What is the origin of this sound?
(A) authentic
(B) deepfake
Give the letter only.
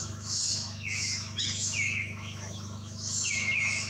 B